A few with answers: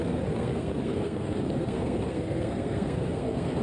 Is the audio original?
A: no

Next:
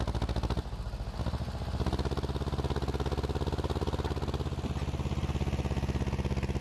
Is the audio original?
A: yes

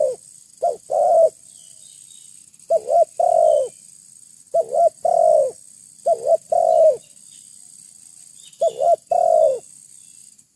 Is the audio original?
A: yes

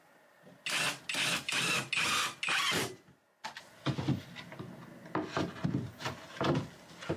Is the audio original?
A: yes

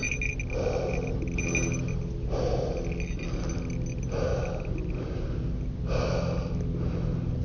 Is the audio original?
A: yes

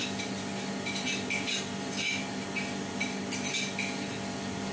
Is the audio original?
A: yes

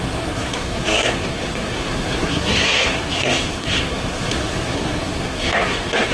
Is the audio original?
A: no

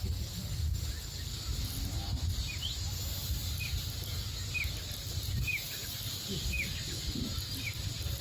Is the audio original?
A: yes